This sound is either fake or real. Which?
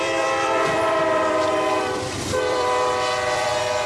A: fake